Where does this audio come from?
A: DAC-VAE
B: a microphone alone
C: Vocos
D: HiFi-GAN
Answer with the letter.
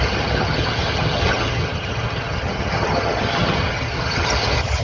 D